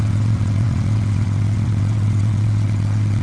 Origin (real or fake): fake